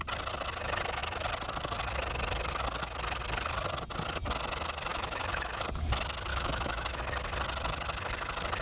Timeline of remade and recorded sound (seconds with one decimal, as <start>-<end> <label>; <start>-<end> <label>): 0.0-4.9 recorded; 4.9-5.6 remade; 5.6-6.3 recorded; 6.3-7.0 remade; 7.0-8.6 recorded